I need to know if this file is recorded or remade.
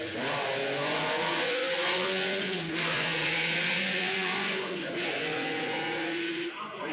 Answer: remade